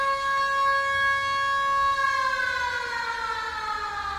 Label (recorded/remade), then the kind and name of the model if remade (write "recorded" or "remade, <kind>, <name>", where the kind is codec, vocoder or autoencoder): recorded